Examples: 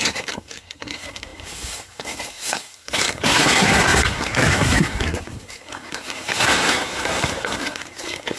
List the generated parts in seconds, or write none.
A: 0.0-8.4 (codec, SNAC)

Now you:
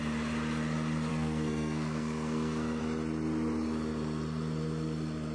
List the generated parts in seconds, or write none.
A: 1.1-2.8 (codec, SNAC)

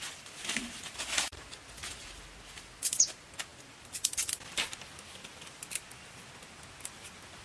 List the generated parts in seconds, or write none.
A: none

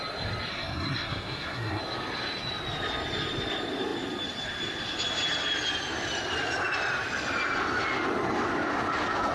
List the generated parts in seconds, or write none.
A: 0.5-1.8 (codec, SNAC)

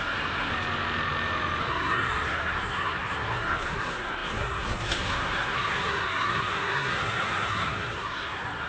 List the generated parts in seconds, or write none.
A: 0.0-0.5 (codec, SNAC); 1.6-8.7

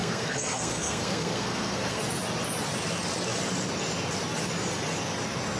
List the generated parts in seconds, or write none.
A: 0.0-2.0 (codec, SNAC)

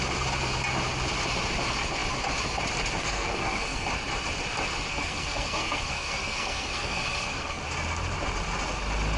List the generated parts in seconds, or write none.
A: 3.0-3.9 (codec, SNAC); 4.9-7.6

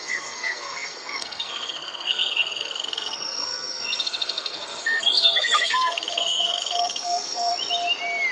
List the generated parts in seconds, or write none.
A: 0.0-7.5 (codec, SNAC)